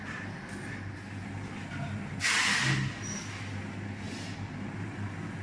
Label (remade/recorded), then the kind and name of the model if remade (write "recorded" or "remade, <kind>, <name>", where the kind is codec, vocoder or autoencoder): recorded